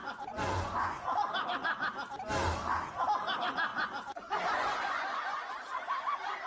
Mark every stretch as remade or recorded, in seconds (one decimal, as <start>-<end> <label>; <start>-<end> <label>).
0.0-1.3 remade; 1.3-3.7 recorded; 3.7-5.5 remade; 5.5-6.5 recorded